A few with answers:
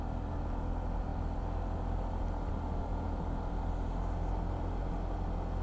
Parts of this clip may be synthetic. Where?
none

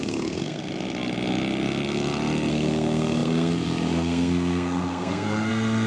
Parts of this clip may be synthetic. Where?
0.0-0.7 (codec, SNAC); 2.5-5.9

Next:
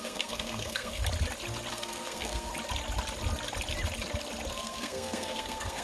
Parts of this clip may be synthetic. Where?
0.0-1.0 (codec, SNAC); 1.7-2.5; 4.5-5.8

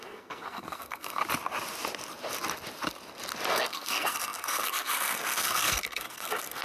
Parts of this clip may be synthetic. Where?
0.0-1.2 (codec, SNAC); 3.5-6.6

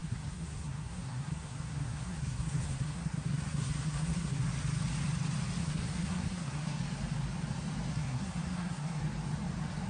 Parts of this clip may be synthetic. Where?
0.0-4.4 (codec, SNAC); 5.6-6.8; 7.9-9.0